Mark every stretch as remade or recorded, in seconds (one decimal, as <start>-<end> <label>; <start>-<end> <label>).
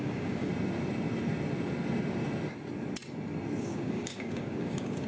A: 0.0-0.5 remade; 0.5-3.6 recorded; 3.6-5.1 remade